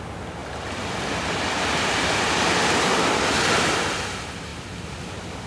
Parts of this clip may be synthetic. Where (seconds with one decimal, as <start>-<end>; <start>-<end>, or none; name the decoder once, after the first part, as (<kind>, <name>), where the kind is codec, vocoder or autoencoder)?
none